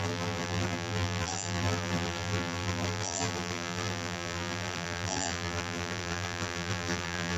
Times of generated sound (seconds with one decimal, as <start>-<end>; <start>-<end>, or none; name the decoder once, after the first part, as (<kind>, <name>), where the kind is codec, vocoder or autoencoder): 0.0-7.4 (vocoder, BigVGAN v2)